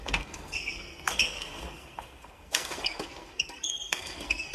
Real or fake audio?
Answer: fake